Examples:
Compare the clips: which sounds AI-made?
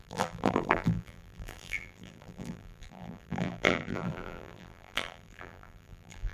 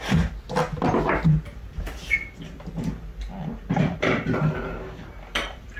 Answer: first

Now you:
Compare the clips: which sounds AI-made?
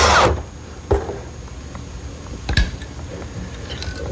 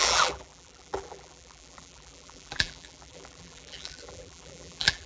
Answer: second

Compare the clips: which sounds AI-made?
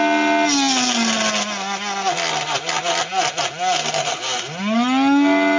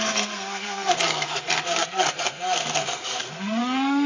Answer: second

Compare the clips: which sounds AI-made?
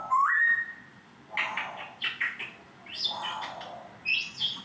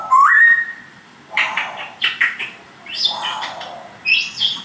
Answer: second